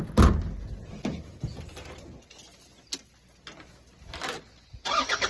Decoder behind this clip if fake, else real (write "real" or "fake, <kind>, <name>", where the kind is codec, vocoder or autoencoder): real